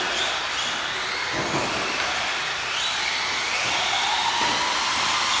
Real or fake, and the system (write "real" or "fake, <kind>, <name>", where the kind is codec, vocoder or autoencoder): real